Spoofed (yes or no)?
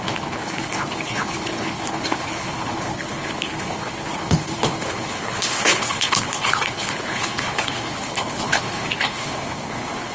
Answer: yes